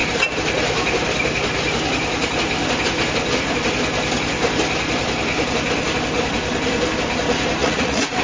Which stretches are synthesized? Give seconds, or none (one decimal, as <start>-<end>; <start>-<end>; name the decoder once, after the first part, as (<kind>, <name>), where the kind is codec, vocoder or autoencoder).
7.6-8.2 (vocoder, Vocos)